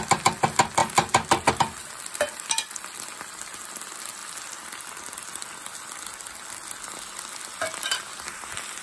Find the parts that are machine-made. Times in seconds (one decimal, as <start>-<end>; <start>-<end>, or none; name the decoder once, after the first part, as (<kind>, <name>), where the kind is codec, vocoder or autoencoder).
none